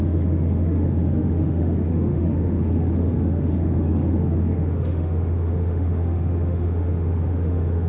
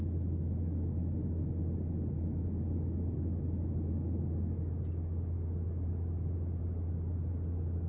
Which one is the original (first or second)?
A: second